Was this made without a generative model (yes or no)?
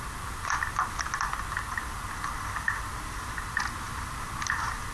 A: yes